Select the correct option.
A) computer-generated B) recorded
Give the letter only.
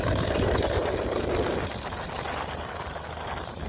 B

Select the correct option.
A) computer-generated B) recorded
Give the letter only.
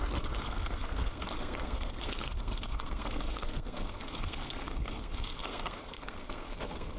A